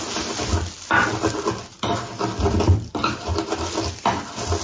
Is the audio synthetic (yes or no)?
no